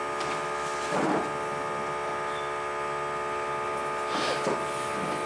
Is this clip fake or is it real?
real